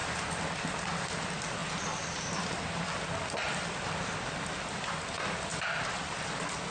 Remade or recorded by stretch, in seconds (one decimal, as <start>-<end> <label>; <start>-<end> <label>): 0.0-6.7 recorded